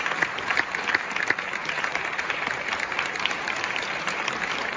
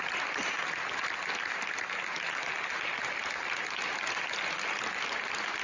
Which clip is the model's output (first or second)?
first